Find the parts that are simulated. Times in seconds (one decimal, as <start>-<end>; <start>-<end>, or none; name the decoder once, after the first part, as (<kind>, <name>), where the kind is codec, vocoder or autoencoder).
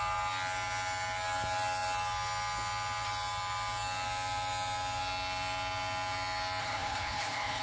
6.6-7.6 (codec, HILCodec)